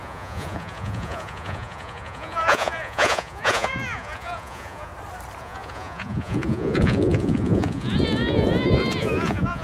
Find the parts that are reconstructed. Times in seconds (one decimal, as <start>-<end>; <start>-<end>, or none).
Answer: 0.0-4.9; 5.4-9.6